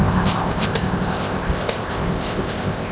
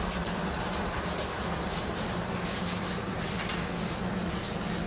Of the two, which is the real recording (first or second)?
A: second